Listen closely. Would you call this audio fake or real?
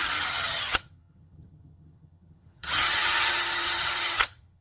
fake